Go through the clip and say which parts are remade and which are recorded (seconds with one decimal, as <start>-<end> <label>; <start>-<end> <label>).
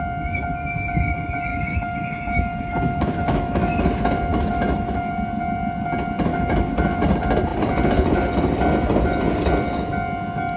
0.0-1.5 recorded; 1.5-3.8 remade; 3.8-4.3 recorded; 4.3-5.1 remade; 5.1-6.3 recorded; 6.3-7.0 remade; 7.0-10.6 recorded